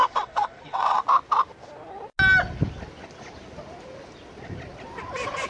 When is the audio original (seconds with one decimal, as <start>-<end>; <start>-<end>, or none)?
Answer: 1.0-5.5